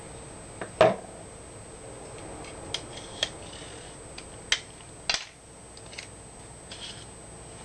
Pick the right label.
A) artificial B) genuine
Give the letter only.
B